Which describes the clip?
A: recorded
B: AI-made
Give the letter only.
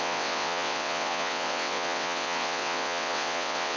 B